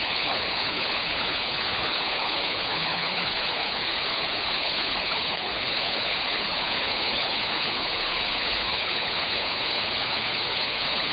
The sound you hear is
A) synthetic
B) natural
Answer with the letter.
A